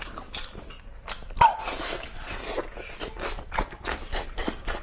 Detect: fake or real real